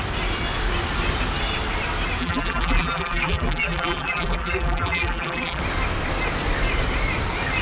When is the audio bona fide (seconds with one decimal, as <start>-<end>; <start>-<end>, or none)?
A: 0.0-2.2; 5.6-7.6